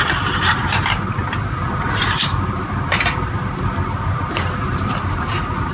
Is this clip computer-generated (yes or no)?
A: no